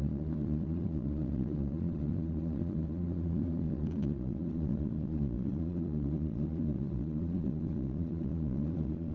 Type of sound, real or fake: fake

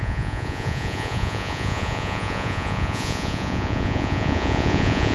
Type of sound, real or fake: fake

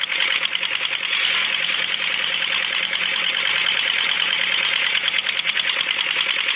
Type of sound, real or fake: real